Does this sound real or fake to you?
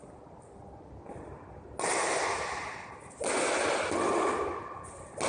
real